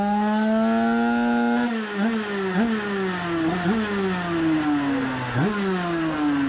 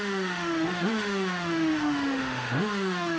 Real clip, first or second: first